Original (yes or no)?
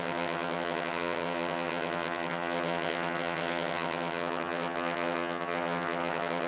no